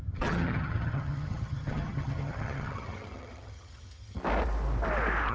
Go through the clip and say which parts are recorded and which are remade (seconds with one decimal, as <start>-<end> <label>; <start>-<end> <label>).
0.0-4.2 remade; 4.2-5.3 recorded